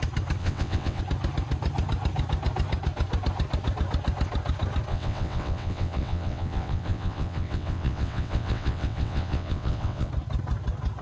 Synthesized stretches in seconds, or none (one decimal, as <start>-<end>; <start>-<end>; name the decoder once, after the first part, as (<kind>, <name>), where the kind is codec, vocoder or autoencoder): 0.4-1.0 (vocoder, WaveNeXt); 4.9-10.1